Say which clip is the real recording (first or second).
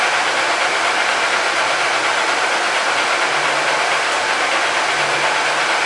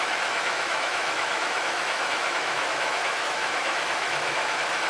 first